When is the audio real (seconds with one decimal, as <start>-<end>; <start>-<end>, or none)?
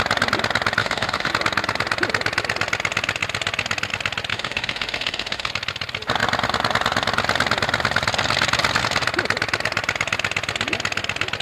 0.0-0.8; 1.3-4.3; 5.5-11.4